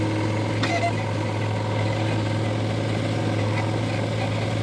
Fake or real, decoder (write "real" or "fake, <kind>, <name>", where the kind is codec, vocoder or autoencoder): real